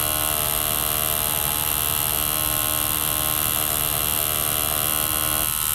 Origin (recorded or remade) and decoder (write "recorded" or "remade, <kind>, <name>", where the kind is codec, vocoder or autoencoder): recorded